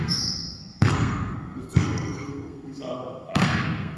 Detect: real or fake fake